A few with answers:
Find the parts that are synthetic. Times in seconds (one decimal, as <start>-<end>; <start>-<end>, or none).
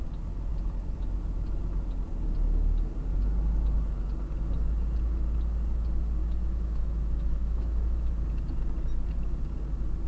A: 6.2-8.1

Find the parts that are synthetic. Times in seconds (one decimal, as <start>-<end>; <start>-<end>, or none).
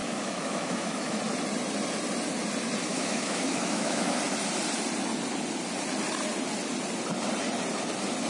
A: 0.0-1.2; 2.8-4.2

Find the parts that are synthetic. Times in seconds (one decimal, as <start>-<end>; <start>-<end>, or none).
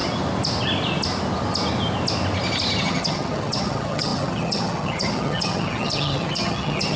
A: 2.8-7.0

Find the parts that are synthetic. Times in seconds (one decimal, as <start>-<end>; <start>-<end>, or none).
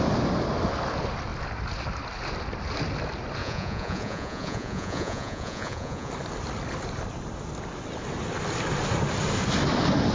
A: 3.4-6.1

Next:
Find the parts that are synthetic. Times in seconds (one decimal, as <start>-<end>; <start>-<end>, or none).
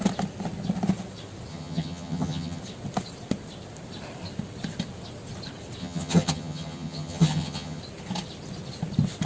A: 1.5-2.6; 5.8-7.8